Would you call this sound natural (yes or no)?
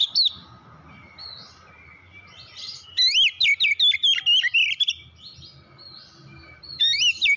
yes